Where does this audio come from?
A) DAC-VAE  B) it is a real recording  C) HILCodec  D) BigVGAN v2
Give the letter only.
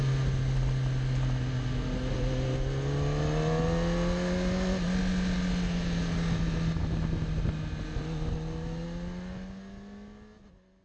B